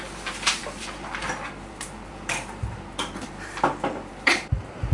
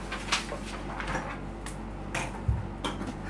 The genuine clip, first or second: second